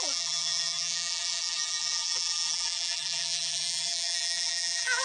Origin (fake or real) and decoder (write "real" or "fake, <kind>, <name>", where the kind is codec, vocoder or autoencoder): fake, vocoder, BigVGAN v2